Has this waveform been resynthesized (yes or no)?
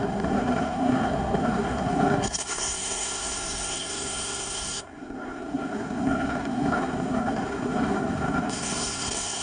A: yes